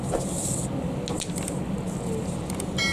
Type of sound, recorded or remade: recorded